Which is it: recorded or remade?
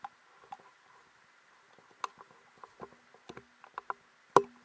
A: recorded